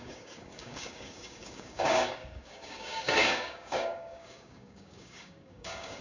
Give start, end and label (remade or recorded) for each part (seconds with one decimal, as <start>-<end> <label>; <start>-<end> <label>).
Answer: 0.0-6.0 remade